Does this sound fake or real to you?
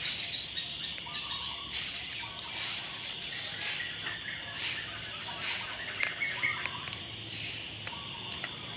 real